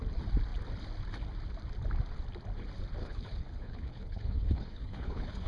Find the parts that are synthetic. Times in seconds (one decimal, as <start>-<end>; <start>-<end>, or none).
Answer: 3.0-5.5